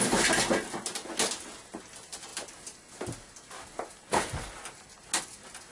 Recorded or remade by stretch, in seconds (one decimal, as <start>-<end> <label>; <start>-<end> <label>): 0.0-5.7 recorded